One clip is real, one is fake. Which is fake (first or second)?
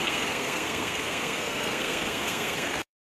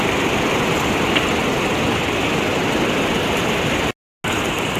first